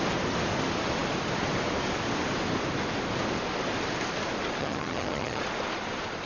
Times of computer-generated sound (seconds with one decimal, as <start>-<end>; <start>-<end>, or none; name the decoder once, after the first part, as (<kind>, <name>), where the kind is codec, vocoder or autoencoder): 4.6-5.4 (vocoder, HiFi-GAN)

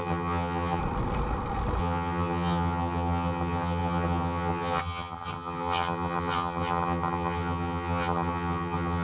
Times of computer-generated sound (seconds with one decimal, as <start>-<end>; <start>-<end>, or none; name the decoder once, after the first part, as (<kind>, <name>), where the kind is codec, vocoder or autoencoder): 0.0-0.8 (vocoder, HiFi-GAN); 1.8-9.0

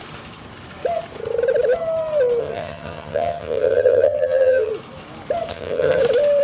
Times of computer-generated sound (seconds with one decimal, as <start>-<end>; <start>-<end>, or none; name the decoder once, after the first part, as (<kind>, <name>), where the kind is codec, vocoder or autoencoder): 2.4-4.7 (vocoder, HiFi-GAN); 5.5-6.0